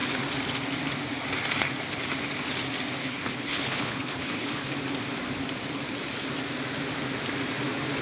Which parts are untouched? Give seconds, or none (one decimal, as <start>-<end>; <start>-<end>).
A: 0.0-3.0; 4.7-8.0